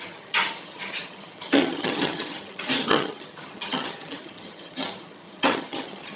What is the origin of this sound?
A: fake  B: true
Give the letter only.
A